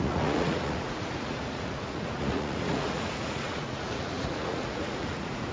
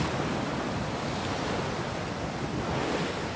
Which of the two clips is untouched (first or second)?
second